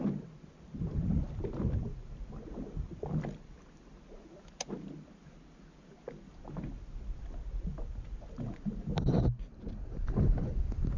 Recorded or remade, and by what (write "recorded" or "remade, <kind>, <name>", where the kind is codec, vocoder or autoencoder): recorded